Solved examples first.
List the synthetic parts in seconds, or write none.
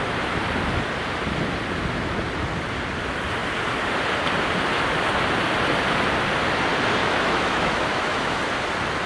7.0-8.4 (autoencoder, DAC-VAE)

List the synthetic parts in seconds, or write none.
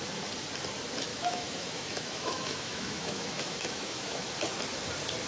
1.1-4.3 (autoencoder, DAC-VAE)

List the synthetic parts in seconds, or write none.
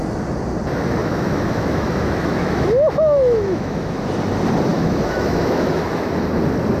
1.0-4.0 (autoencoder, DAC-VAE); 4.7-6.1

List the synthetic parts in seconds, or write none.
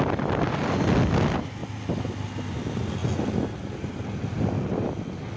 none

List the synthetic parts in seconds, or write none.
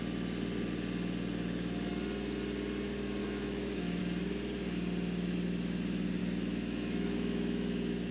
3.2-4.0 (autoencoder, DAC-VAE); 6.2-8.1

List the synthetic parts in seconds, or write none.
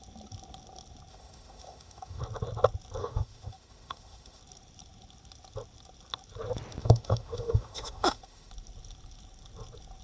1.1-2.2 (autoencoder, DAC-VAE); 3.0-4.4; 6.8-8.5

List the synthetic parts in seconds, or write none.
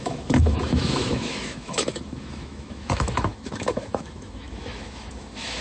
0.0-5.6 (autoencoder, DAC-VAE)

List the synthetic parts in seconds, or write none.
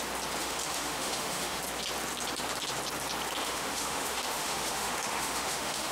0.4-1.6 (autoencoder, DAC-VAE); 3.4-5.9